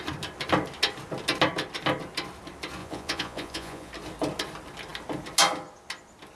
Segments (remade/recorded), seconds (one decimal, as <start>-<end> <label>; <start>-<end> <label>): 0.0-2.8 recorded; 2.8-3.9 remade; 3.9-6.4 recorded